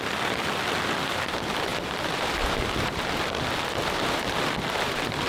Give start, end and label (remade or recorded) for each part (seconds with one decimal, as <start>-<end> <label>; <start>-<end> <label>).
0.0-5.3 recorded